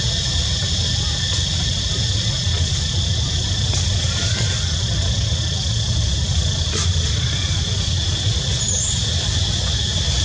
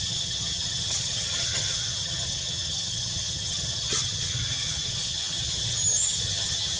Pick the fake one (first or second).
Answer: second